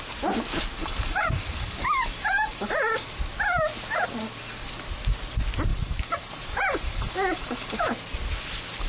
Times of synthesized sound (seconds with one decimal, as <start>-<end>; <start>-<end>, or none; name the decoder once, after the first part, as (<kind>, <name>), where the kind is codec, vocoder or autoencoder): 0.8-3.2 (vocoder, BigVGAN v2); 5.7-6.3; 6.7-7.9